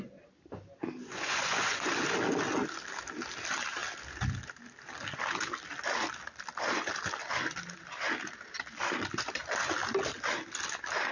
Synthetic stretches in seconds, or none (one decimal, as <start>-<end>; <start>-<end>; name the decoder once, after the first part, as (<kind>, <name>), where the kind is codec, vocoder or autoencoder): 1.0-1.9 (vocoder, Vocos)